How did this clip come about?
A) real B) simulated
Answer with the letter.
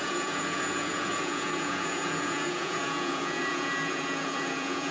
B